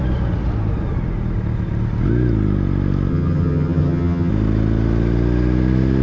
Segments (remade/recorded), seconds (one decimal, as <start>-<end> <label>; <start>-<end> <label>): 0.0-3.1 recorded; 3.1-4.3 remade; 4.3-6.0 recorded